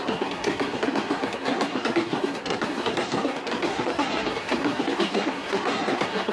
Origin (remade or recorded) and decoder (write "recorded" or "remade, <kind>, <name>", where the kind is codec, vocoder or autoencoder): remade, codec, SNAC